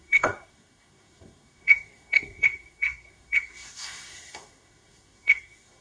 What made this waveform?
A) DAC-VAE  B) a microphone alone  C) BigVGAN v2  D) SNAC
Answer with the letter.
D